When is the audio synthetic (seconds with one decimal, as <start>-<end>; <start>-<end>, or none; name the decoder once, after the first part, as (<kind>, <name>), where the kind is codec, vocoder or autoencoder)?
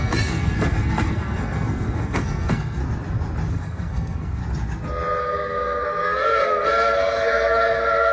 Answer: 0.0-2.8 (codec, SNAC); 3.5-4.4; 5.2-8.1